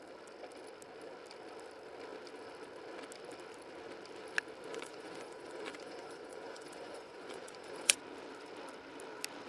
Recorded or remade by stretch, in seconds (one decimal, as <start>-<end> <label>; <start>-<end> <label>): 0.0-4.7 recorded; 4.7-8.0 remade; 8.0-9.5 recorded